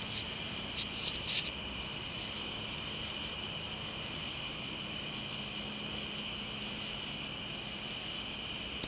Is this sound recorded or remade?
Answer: recorded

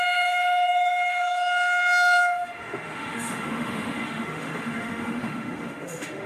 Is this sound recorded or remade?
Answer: remade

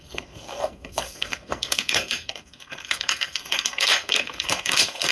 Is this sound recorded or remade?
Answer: remade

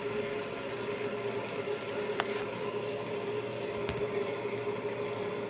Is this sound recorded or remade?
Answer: recorded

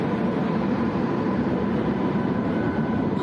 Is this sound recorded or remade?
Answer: remade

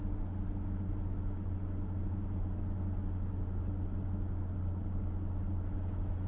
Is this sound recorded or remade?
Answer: recorded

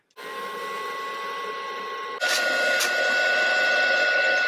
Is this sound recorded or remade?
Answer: recorded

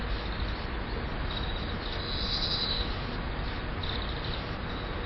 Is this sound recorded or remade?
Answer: recorded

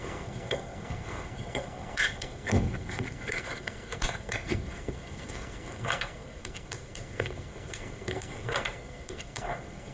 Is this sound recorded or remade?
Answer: remade